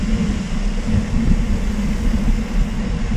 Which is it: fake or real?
real